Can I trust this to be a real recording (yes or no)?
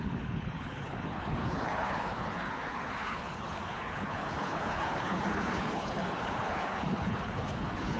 no